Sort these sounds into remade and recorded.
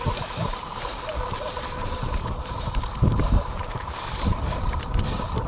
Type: remade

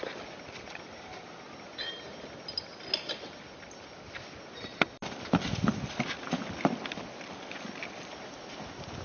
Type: recorded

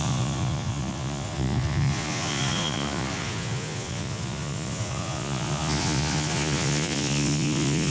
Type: remade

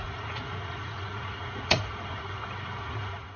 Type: remade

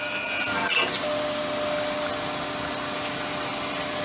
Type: recorded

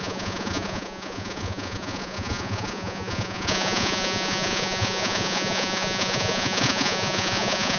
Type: remade